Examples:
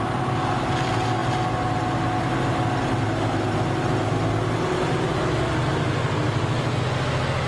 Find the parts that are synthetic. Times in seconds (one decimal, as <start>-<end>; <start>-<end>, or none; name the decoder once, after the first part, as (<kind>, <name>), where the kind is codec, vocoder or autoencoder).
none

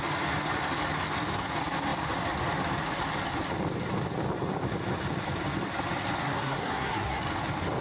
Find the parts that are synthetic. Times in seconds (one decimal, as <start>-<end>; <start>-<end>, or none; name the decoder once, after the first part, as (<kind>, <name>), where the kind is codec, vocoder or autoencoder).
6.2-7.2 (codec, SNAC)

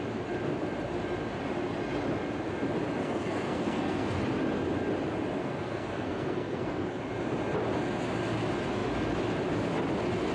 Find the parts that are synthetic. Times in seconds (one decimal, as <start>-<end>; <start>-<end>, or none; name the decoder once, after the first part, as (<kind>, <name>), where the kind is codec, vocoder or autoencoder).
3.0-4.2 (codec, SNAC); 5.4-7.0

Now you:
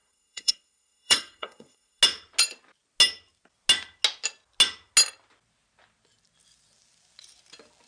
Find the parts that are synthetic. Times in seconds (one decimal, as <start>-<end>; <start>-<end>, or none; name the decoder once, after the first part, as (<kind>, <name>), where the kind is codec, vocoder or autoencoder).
0.0-2.0 (codec, SNAC)